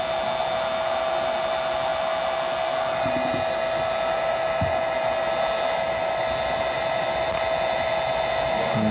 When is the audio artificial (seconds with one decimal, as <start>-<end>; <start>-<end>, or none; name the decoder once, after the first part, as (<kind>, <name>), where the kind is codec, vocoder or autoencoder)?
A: none